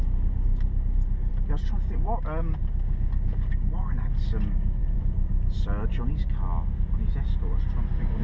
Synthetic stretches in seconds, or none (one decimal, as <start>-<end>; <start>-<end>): 1.3-1.9; 4.8-6.1